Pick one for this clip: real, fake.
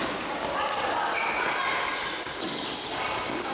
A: real